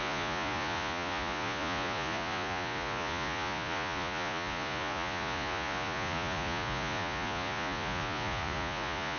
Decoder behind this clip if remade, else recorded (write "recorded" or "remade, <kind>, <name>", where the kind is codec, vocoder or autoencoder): remade, vocoder, Vocos